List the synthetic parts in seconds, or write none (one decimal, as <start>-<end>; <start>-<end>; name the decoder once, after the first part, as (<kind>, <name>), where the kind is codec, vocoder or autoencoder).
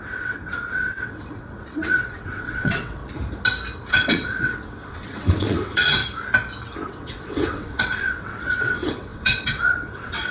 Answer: 0.0-3.0 (vocoder, WaveNeXt); 3.9-6.0; 6.9-10.3